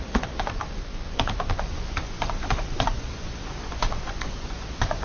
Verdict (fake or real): fake